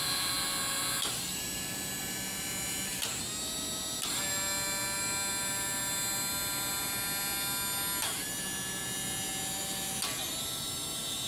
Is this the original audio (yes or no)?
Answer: yes